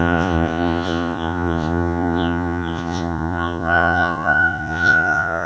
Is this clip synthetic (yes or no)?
yes